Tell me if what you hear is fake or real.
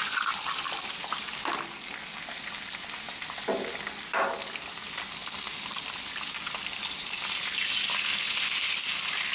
real